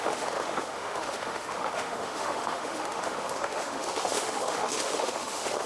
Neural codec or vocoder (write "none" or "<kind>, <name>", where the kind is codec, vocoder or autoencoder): autoencoder, DAC-VAE